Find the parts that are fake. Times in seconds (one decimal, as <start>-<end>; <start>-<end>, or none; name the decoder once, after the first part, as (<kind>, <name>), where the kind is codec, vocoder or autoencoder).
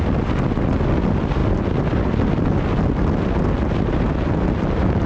none